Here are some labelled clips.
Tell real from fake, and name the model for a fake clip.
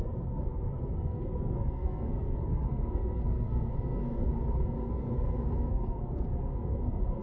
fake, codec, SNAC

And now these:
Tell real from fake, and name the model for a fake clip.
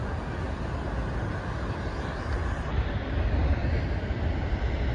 real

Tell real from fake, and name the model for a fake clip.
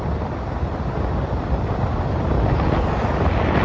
real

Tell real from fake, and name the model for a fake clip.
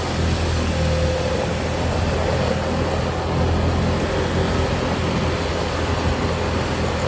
real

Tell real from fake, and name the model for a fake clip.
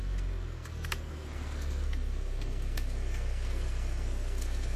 fake, codec, SNAC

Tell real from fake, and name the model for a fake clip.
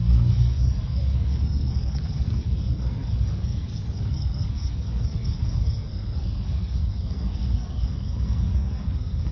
fake, codec, SNAC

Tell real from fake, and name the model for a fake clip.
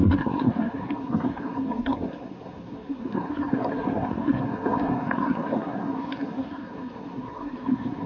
fake, codec, SNAC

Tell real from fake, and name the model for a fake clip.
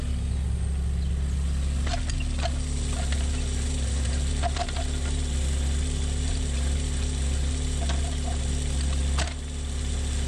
real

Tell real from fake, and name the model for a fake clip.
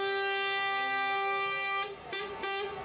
real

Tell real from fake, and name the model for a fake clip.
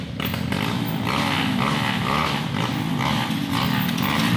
real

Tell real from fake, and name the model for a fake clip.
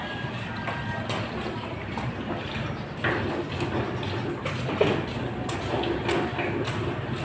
real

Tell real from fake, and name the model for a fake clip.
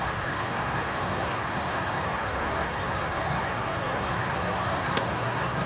fake, codec, SNAC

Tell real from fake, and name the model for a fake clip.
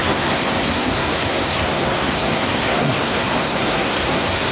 fake, codec, SNAC